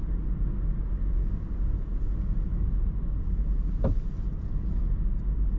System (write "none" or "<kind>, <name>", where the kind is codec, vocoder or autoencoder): none